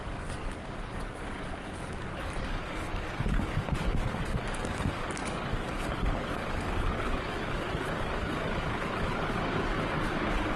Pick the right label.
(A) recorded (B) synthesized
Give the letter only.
B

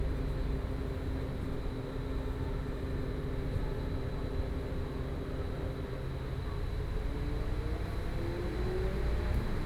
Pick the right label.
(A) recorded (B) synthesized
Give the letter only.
A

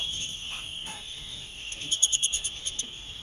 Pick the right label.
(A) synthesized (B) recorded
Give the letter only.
A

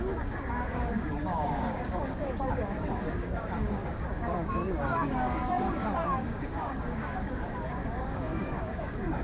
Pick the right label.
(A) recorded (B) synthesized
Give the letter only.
B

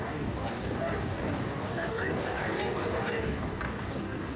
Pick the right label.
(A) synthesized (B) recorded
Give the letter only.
A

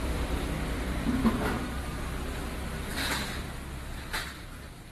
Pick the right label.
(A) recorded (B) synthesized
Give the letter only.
A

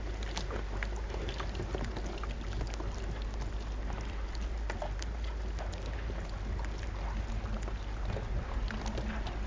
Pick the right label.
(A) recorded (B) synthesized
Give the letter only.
A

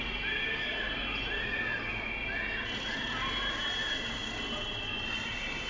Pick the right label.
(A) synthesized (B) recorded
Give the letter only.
B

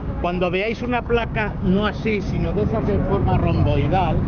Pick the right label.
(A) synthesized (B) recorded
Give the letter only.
A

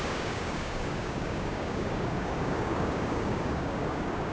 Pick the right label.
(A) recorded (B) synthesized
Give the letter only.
B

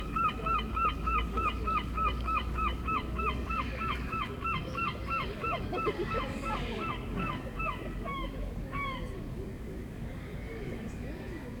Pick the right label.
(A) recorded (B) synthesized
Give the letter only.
B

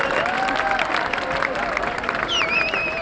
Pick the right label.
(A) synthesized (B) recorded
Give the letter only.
B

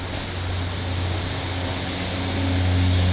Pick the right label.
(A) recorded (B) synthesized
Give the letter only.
A